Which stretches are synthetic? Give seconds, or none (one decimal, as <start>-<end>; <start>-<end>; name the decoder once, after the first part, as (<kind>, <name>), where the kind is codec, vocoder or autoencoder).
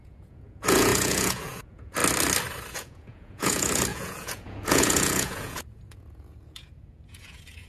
0.0-2.0 (vocoder, Vocos); 2.7-7.7